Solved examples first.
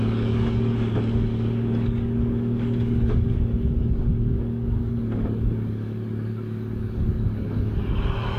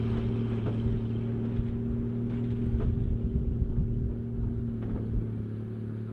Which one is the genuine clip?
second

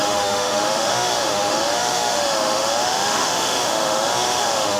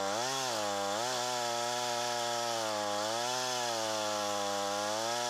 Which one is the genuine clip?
second